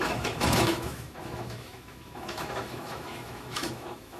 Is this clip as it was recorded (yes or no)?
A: no